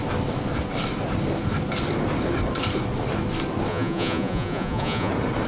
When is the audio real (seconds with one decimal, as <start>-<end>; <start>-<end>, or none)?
0.0-3.7; 5.1-5.5